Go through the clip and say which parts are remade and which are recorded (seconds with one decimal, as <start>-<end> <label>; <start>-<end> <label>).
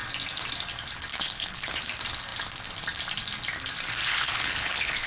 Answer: 0.0-1.1 recorded; 1.1-1.8 remade; 1.8-4.0 recorded; 4.0-5.1 remade